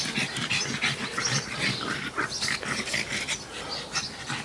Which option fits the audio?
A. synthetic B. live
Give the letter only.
B